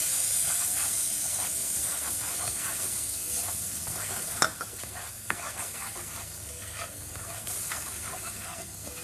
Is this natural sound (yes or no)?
no